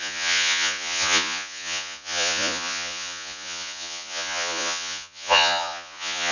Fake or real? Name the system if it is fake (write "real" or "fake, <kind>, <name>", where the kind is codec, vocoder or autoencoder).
fake, vocoder, Vocos